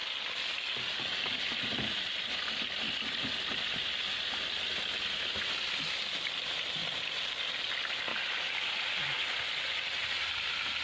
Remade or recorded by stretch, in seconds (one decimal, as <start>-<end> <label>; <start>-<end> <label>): 0.0-10.8 recorded